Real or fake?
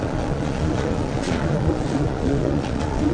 fake